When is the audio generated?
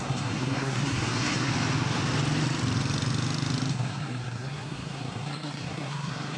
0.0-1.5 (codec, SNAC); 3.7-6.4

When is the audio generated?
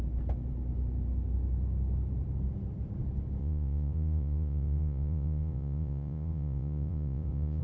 3.4-7.6 (vocoder, Vocos)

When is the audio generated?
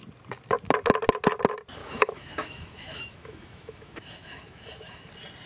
1.8-5.1 (autoencoder, DAC-VAE)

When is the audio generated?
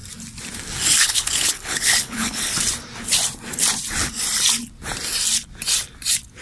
1.0-2.5 (codec, HILCodec)